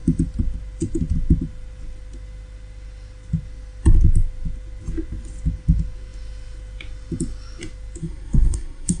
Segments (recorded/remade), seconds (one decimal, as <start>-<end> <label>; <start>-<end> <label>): 0.0-8.0 recorded; 8.0-9.0 remade